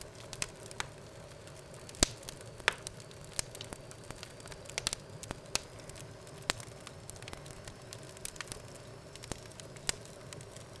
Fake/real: real